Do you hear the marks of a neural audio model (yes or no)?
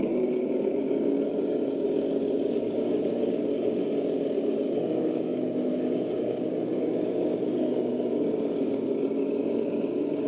yes